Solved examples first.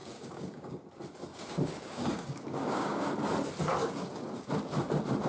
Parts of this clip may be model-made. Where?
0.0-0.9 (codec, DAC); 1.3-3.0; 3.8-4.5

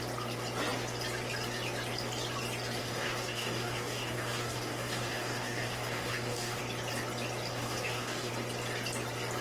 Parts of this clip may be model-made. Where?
2.8-6.6 (codec, DAC); 7.5-8.3

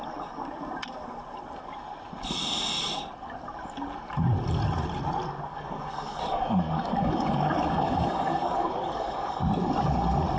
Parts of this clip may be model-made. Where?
5.5-9.4 (codec, DAC)

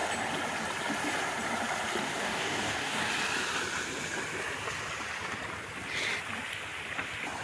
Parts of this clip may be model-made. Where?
2.0-3.1 (codec, DAC)

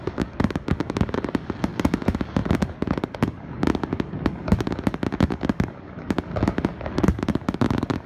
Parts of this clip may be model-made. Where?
0.0-8.1 (codec, DAC)

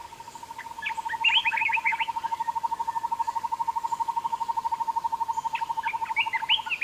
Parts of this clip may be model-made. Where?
0.0-0.7 (codec, DAC); 1.4-4.7

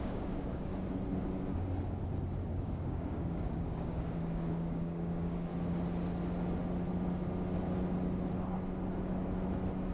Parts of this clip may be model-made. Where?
0.0-0.7 (codec, DAC); 2.4-5.5

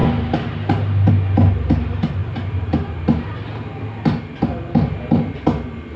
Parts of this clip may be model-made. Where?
none